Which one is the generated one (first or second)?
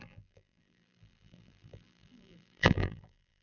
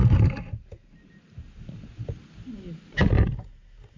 first